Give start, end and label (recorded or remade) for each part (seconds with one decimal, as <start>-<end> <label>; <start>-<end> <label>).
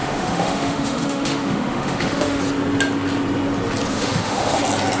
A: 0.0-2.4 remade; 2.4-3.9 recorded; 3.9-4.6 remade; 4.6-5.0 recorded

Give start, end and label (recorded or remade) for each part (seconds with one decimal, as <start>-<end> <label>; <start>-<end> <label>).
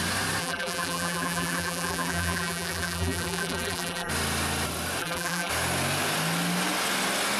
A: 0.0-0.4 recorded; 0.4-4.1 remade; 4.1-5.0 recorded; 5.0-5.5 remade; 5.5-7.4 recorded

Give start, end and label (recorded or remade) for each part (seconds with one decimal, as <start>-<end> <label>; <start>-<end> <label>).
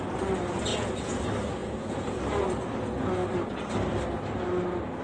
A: 0.0-0.7 recorded; 0.7-1.2 remade; 1.2-1.6 recorded; 1.6-2.2 remade; 2.2-5.0 recorded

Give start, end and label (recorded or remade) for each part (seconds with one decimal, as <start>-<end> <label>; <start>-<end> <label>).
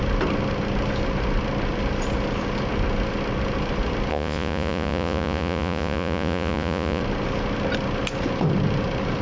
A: 0.0-4.1 recorded; 4.1-7.0 remade; 7.0-9.2 recorded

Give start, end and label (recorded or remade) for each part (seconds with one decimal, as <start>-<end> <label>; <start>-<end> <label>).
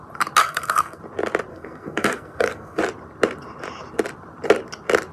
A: 0.0-0.4 recorded; 0.4-1.0 remade; 1.0-1.5 recorded; 1.5-2.8 remade; 2.8-5.1 recorded